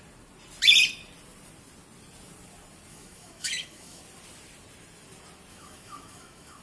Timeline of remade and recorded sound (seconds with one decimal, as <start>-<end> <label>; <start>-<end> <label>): 0.0-2.9 recorded; 2.9-4.0 remade; 4.0-5.5 recorded; 5.5-6.6 remade